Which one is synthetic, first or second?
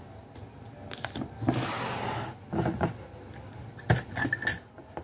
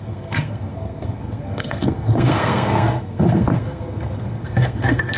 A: second